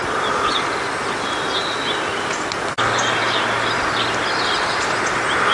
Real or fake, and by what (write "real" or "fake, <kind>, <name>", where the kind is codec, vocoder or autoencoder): real